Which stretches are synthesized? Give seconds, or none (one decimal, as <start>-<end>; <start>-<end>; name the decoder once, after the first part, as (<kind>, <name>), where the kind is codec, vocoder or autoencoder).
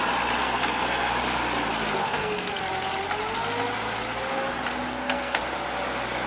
0.4-1.1 (codec, SNAC); 2.0-2.6; 4.9-5.4